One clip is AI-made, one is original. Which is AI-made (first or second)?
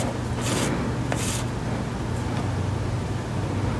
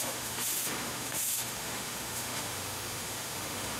second